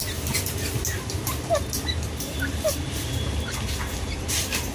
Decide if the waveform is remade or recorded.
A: recorded